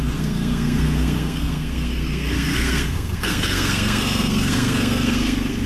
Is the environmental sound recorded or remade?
remade